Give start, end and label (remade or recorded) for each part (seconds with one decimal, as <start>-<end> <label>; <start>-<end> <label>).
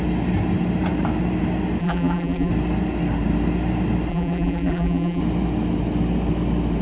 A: 0.0-1.8 recorded; 1.8-2.5 remade; 2.5-4.1 recorded; 4.1-5.2 remade; 5.2-6.8 recorded